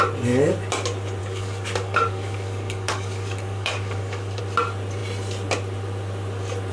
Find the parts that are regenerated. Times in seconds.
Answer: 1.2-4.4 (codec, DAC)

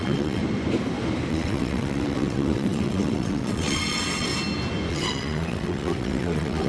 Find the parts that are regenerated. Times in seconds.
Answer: 0.0-0.4 (vocoder, WaveNeXt); 1.3-4.3; 4.9-6.7